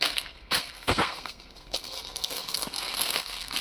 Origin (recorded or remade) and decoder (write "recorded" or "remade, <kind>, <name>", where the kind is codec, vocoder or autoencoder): remade, codec, SNAC